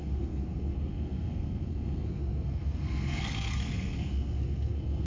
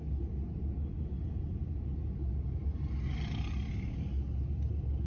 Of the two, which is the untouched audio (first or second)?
second